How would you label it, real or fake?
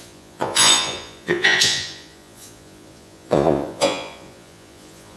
fake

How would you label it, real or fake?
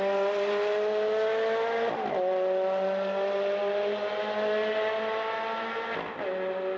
real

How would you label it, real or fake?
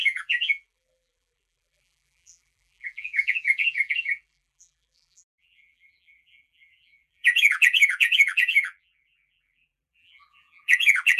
fake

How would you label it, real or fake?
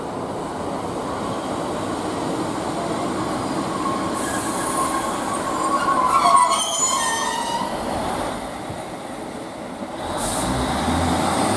real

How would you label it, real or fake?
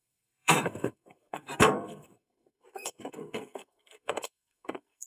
fake